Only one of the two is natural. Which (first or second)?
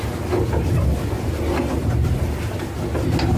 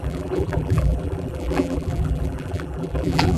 first